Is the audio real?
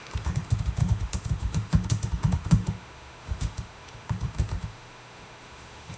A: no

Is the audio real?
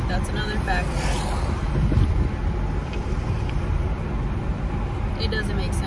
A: yes